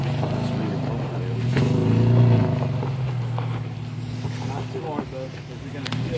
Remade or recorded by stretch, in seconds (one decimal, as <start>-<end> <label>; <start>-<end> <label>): 0.0-6.2 recorded